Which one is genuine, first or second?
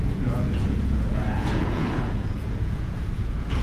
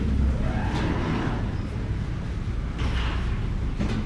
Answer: second